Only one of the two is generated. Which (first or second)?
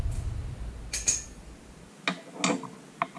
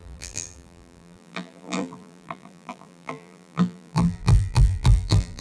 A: second